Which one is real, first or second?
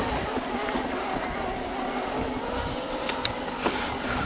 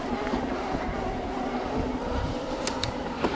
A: first